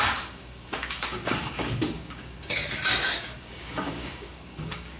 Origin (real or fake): fake